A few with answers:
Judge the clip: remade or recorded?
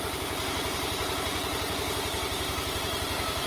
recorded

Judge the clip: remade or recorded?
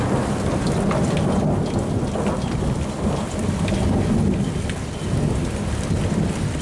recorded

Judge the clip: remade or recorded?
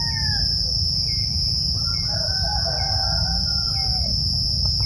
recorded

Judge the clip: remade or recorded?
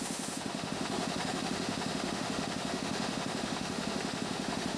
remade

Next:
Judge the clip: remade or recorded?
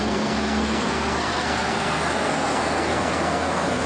remade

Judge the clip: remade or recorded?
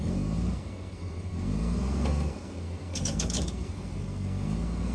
remade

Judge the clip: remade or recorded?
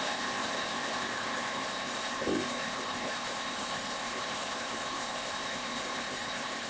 remade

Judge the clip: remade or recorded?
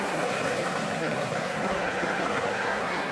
remade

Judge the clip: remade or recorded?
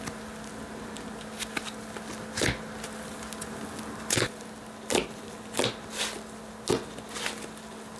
recorded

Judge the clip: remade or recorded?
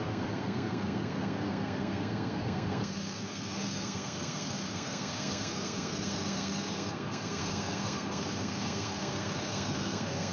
remade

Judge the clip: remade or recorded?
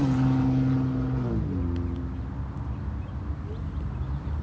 recorded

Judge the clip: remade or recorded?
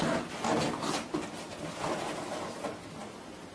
recorded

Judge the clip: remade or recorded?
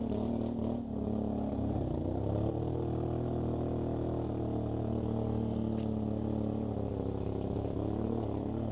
recorded